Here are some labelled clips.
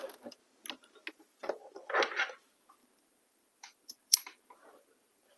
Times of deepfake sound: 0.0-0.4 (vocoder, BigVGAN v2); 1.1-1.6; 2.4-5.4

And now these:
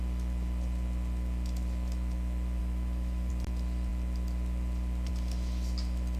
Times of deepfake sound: 2.6-3.3 (autoencoder, DAC-VAE)

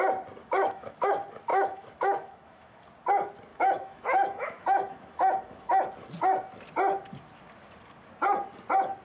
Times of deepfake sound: 0.4-1.1 (autoencoder, DAC-VAE); 1.5-2.8; 3.5-5.7

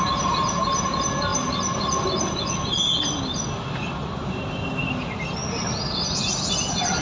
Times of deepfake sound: none

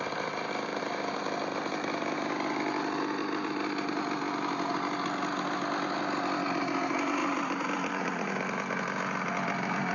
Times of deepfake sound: 0.7-1.3 (vocoder, BigVGAN v2); 7.2-8.3